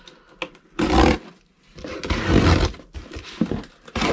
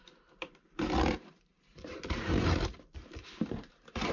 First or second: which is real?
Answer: first